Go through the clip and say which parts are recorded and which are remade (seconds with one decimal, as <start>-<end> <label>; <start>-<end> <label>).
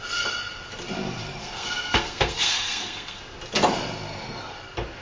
0.0-1.4 recorded; 1.4-3.2 remade; 3.2-5.0 recorded